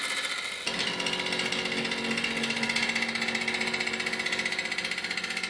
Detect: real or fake real